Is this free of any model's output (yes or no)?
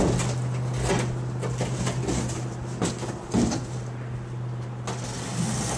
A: yes